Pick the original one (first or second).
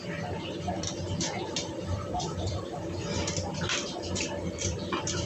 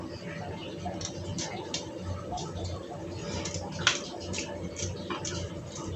second